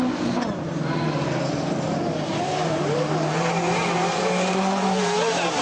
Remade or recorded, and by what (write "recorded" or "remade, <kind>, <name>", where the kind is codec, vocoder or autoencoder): remade, vocoder, BigVGAN v2